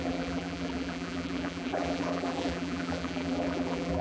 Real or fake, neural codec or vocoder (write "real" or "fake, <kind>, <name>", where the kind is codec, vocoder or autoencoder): fake, vocoder, BigVGAN v2